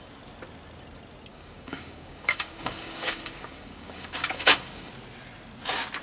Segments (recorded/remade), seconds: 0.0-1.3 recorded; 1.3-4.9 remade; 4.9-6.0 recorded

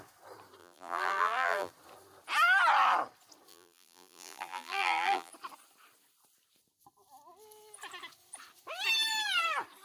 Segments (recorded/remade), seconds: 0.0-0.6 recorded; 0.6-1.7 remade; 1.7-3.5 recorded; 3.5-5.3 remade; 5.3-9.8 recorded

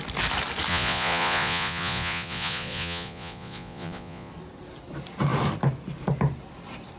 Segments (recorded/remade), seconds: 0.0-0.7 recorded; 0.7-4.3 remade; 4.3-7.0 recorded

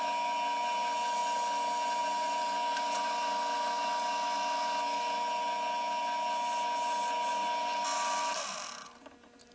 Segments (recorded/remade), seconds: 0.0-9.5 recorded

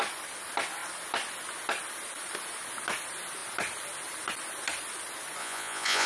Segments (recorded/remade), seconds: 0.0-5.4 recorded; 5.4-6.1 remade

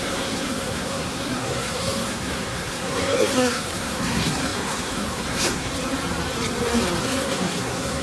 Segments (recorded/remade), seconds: 0.0-5.7 remade; 5.7-7.0 recorded; 7.0-8.0 remade

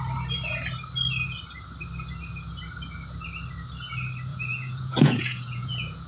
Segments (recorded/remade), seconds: 0.0-4.3 recorded; 4.3-6.1 remade

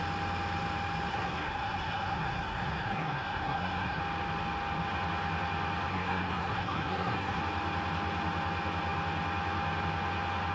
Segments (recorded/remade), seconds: 0.0-1.1 recorded; 1.1-4.0 remade; 4.0-5.9 recorded; 5.9-7.4 remade; 7.4-10.5 recorded